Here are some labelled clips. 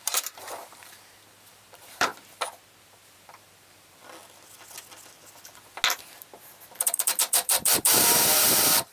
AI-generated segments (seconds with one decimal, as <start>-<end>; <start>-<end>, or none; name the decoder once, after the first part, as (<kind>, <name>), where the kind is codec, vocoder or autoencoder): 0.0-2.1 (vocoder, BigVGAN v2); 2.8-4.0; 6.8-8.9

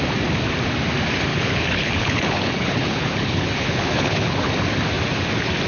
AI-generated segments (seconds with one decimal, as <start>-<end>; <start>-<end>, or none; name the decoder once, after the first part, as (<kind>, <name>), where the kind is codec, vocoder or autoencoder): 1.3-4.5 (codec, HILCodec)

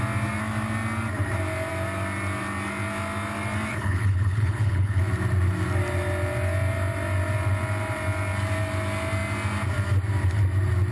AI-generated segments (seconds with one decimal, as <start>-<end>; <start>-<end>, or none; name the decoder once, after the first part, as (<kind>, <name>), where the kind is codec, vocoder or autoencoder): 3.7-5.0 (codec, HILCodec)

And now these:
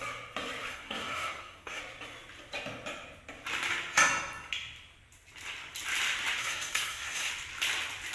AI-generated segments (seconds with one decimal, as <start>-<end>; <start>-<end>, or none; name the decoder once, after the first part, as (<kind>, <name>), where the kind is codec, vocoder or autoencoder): 0.7-1.8 (codec, SNAC); 6.4-7.3

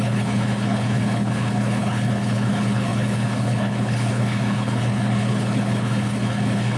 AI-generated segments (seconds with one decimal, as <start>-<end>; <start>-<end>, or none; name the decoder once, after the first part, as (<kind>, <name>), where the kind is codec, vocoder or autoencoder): 0.0-6.8 (codec, HILCodec)

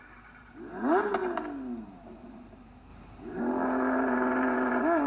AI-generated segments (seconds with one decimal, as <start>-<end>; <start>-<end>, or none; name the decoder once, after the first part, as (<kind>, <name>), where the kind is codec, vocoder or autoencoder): 0.0-1.2 (vocoder, BigVGAN v2); 1.8-5.1

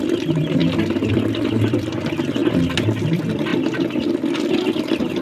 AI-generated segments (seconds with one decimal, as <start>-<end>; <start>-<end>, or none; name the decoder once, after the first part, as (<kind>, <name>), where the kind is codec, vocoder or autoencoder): 0.0-0.6 (vocoder, BigVGAN v2); 1.1-2.4; 3.0-5.2